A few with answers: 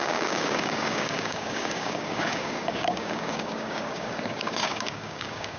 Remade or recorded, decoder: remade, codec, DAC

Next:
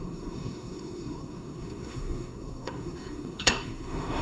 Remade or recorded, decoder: remade, codec, SNAC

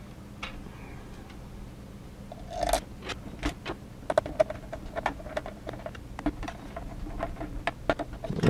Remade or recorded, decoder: recorded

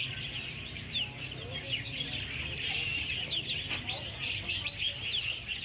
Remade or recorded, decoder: recorded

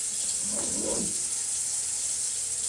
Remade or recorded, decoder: recorded